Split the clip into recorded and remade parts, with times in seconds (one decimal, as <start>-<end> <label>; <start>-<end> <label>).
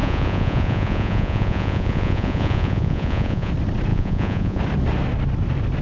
0.0-3.5 remade; 3.5-3.9 recorded; 3.9-4.6 remade; 4.6-5.8 recorded